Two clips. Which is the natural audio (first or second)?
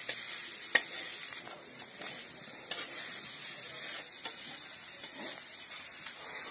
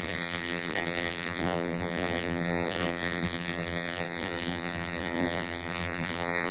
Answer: first